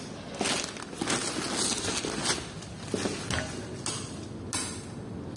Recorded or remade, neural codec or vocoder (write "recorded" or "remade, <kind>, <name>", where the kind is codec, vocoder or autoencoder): recorded